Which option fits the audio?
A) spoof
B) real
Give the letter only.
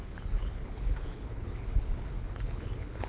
A